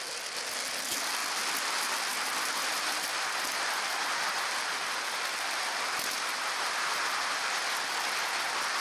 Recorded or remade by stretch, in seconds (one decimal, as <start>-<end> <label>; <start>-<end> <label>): 0.0-8.8 recorded